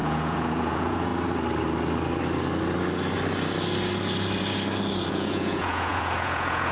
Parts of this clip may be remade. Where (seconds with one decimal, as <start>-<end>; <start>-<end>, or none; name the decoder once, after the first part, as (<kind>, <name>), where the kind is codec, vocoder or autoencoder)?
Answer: 0.0-1.1 (vocoder, Vocos); 5.1-6.7